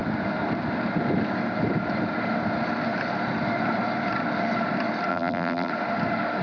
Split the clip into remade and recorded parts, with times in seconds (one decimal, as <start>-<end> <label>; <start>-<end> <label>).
0.0-5.1 recorded; 5.1-5.7 remade; 5.7-6.4 recorded

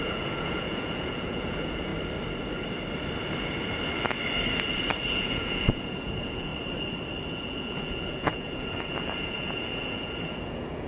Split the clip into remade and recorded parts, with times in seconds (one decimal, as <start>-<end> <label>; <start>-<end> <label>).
0.0-1.9 remade; 1.9-5.1 recorded; 5.1-6.5 remade; 6.5-7.3 recorded; 7.3-10.9 remade